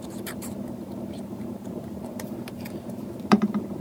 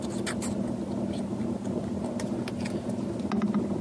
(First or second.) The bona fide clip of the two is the second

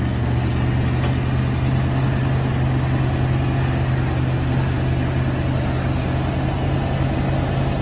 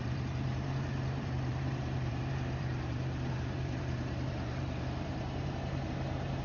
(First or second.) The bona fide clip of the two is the first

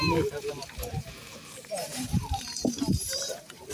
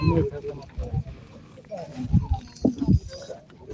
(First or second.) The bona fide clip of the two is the second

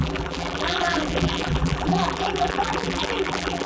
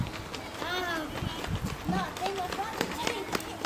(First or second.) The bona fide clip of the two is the second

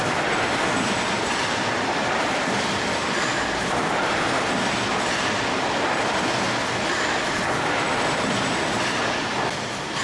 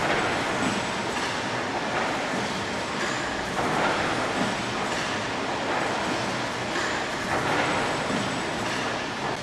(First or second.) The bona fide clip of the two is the second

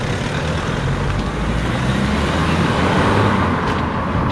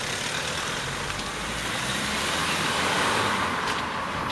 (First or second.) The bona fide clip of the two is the first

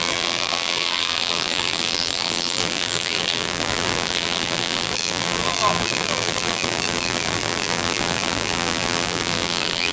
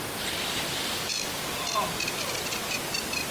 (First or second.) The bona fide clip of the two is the second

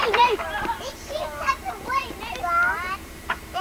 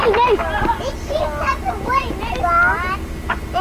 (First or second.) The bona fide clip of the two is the second